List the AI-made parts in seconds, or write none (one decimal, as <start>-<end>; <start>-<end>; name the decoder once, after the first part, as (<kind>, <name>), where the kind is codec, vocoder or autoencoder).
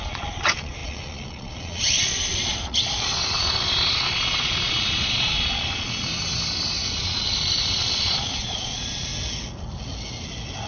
0.0-6.1 (vocoder, Vocos); 6.9-9.1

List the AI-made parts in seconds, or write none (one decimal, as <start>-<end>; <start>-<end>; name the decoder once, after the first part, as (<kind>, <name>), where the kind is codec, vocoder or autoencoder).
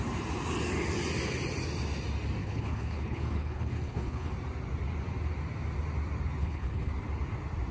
2.4-4.3 (codec, HILCodec); 6.4-6.9